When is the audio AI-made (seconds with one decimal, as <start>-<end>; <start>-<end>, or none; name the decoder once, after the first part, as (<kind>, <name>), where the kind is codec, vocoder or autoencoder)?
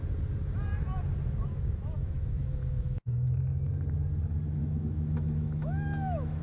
1.5-3.4 (autoencoder, DAC-VAE); 4.6-6.4